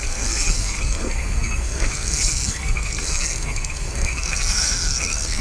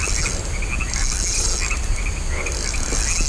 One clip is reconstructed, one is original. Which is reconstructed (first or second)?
first